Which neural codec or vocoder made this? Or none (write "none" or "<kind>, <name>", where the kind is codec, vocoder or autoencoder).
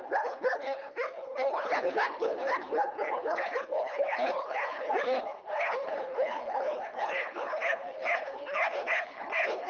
codec, HILCodec